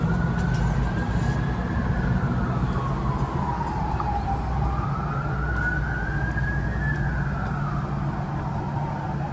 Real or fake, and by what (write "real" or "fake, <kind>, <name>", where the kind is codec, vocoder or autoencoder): real